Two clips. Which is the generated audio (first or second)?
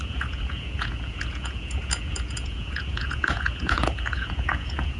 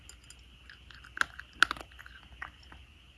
first